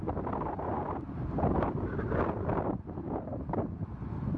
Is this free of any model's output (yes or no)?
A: yes